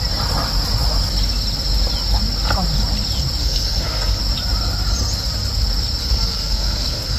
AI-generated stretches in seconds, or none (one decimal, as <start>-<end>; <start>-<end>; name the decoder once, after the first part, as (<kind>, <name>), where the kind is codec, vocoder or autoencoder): 3.4-4.2 (codec, SNAC); 6.0-7.2